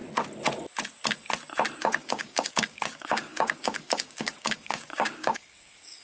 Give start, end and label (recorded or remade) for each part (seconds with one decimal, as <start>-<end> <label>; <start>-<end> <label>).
0.0-1.8 recorded; 1.8-6.0 remade